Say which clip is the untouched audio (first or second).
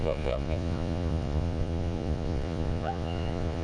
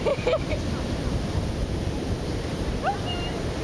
second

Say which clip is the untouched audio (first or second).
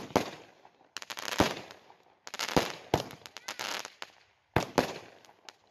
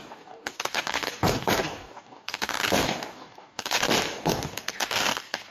first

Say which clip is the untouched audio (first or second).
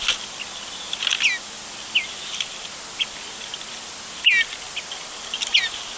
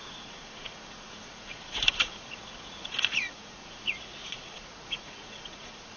first